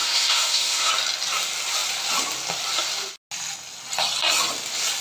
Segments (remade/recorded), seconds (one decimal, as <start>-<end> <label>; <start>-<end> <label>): 0.0-0.9 remade; 0.9-5.0 recorded

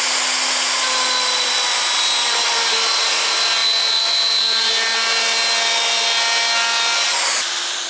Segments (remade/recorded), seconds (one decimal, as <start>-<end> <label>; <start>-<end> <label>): 0.0-7.9 recorded

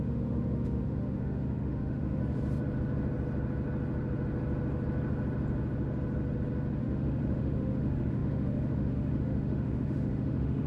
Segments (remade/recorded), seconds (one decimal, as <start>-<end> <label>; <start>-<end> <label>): 0.0-2.2 remade; 2.2-6.8 recorded; 6.8-10.7 remade